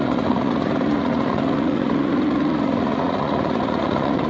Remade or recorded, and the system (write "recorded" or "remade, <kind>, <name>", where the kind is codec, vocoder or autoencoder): remade, vocoder, Vocos